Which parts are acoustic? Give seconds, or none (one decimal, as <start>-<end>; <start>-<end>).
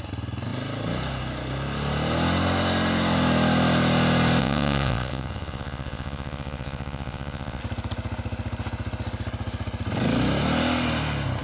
0.0-4.4; 7.6-11.4